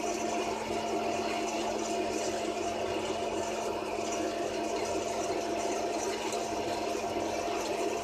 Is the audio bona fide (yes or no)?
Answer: yes